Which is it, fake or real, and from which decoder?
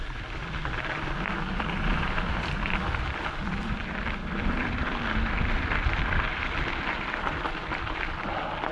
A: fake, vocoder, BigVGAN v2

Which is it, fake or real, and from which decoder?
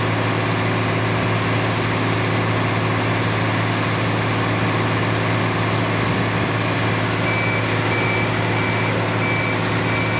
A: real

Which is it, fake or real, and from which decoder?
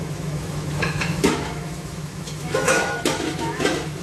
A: fake, autoencoder, DAC-VAE